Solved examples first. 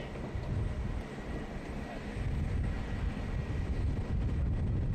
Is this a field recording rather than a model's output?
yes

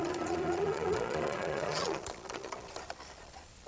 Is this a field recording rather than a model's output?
no